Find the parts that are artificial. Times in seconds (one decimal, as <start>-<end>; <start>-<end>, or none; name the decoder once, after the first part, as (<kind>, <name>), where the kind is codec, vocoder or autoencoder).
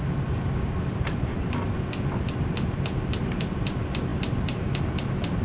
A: none